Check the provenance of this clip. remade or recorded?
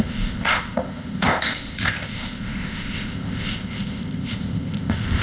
remade